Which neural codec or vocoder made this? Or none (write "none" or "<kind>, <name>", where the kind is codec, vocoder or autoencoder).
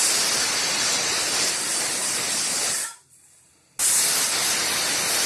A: none